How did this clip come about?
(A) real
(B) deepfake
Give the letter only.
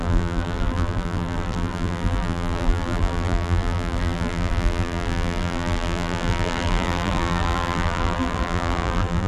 B